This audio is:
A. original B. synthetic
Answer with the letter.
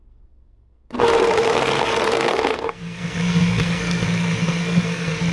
B